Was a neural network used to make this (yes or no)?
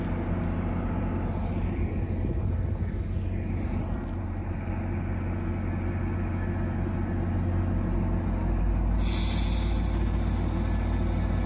no